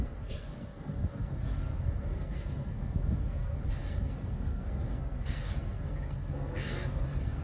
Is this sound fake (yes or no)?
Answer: yes